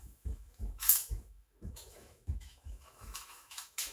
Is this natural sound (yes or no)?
no